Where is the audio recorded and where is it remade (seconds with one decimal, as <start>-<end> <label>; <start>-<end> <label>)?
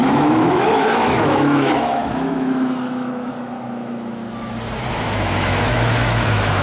0.0-4.2 remade; 4.2-4.9 recorded; 4.9-6.6 remade